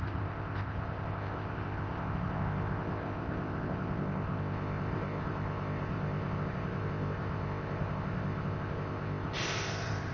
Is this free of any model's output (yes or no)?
no